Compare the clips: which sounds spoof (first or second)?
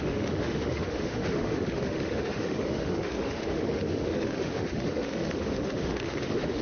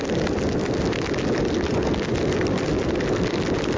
first